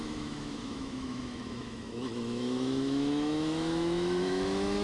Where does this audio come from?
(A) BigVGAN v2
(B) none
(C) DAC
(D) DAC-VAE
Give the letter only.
D